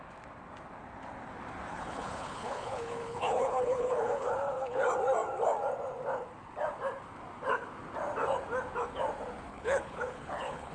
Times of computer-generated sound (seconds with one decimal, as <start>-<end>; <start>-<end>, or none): 1.7-4.8; 9.5-10.7